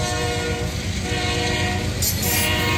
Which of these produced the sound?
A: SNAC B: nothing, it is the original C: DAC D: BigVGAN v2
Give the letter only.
B